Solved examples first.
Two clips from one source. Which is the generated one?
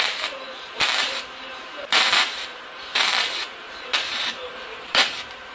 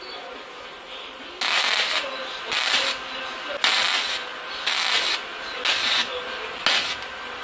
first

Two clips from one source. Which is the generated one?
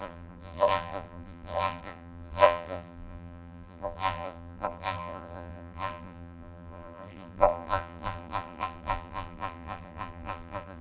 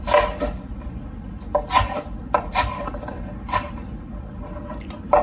first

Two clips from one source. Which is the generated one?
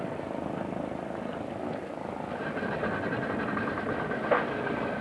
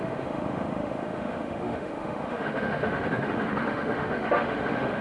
second